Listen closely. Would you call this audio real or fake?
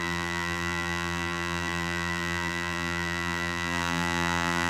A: fake